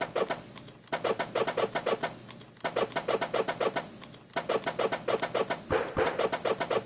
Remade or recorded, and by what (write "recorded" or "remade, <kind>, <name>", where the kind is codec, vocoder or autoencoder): recorded